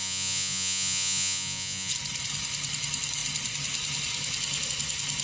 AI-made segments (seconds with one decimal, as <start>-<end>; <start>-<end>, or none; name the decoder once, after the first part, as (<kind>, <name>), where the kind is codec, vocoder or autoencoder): 0.0-1.9 (vocoder, Vocos)